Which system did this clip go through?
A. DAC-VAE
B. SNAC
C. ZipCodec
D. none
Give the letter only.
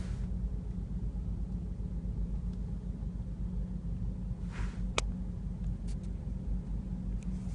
D